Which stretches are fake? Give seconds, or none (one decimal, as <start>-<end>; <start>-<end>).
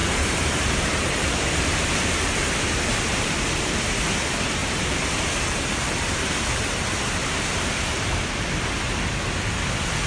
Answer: 0.0-1.9; 4.6-6.2; 7.2-8.3